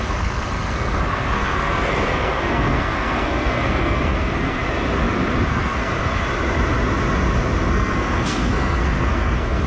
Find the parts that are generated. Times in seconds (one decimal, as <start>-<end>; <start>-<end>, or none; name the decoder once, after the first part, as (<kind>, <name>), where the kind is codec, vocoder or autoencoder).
0.0-4.6 (codec, SNAC); 5.5-5.9; 7.7-9.7